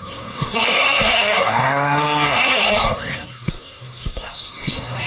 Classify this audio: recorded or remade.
remade